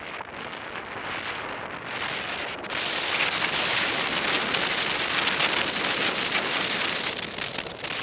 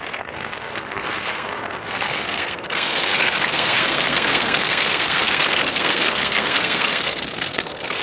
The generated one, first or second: second